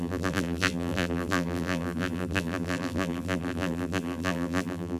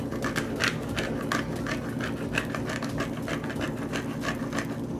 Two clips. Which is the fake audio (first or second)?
first